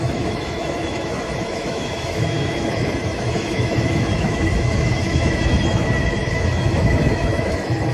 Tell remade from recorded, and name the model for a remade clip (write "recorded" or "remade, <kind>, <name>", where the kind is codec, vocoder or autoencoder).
remade, autoencoder, DAC-VAE